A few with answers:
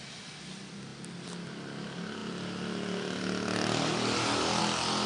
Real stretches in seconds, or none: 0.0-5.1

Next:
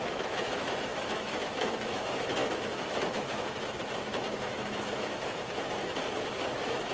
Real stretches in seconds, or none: none

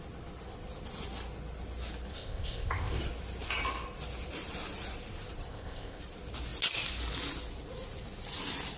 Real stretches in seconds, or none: 0.0-2.1; 3.0-5.5; 6.0-8.8